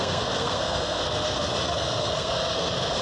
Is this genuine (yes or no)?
no